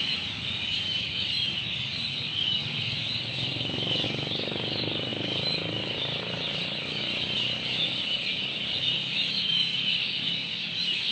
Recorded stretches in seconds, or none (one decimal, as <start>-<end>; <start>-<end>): none